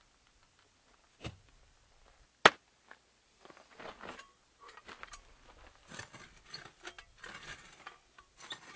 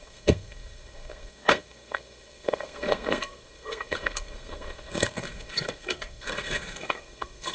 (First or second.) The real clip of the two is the first